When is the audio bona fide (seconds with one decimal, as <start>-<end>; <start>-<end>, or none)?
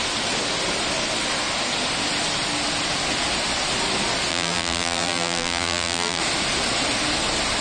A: 0.0-4.3; 6.2-7.6